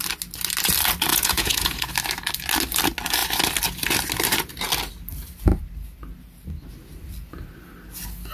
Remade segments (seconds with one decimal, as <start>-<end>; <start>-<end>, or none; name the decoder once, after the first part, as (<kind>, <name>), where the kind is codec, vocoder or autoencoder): 1.1-1.9 (vocoder, Vocos)